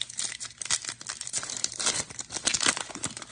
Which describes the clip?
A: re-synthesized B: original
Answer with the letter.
B